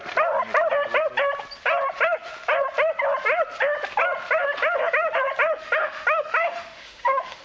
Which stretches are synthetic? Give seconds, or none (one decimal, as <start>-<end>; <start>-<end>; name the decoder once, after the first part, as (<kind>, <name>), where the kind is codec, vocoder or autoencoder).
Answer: 5.6-7.4 (autoencoder, DAC-VAE)